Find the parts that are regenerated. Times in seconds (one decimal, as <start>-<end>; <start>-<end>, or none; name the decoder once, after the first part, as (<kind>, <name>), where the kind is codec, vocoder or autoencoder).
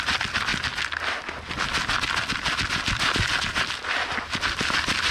none